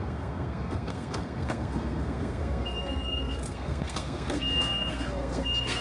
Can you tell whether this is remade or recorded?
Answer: remade